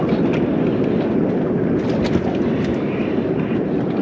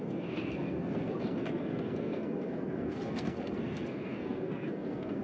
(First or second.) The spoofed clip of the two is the second